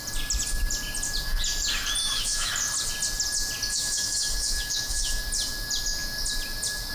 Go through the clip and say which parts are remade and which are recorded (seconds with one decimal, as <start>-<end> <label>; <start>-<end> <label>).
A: 0.0-2.0 recorded; 2.0-2.5 remade; 2.5-3.7 recorded; 3.7-5.2 remade; 5.2-6.9 recorded